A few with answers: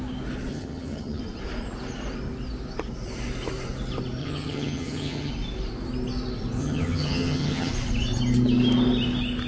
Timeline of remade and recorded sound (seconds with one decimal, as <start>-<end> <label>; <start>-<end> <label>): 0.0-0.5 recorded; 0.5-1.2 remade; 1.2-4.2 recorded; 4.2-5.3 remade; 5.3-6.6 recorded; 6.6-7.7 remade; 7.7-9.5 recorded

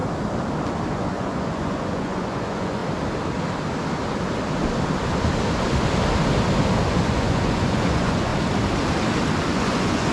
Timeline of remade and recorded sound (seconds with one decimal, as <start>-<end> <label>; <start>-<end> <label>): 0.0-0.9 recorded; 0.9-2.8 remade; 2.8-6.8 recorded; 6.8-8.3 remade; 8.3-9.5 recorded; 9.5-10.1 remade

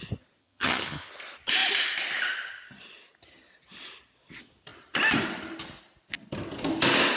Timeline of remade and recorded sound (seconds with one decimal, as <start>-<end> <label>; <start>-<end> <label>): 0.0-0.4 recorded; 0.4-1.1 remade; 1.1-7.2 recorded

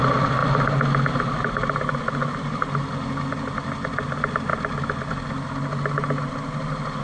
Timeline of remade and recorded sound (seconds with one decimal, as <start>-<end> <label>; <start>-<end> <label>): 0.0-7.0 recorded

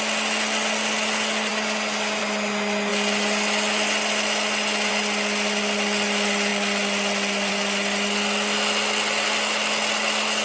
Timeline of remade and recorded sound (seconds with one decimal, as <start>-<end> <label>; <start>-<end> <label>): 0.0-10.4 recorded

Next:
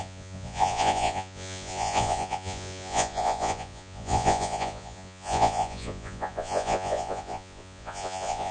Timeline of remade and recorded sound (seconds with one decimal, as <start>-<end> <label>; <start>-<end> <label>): 0.0-8.5 remade

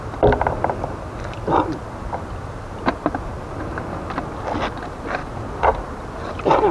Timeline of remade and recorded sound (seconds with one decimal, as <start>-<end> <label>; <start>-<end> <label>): 0.0-6.7 recorded